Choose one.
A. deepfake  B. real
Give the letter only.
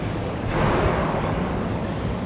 A